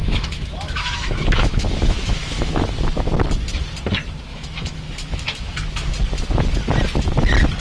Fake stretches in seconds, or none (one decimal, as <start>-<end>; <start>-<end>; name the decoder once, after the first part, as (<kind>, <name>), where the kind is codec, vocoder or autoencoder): 0.0-2.7 (autoencoder, DAC-VAE); 4.3-5.9